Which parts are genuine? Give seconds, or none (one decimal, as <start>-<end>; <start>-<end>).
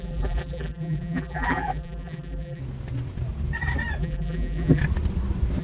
2.6-4.0; 4.8-5.6